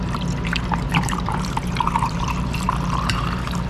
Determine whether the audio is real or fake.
fake